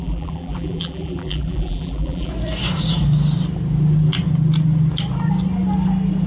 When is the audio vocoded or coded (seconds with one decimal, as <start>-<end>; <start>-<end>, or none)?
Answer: 0.0-2.3